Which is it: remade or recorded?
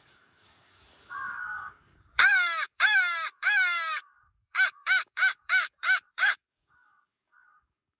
remade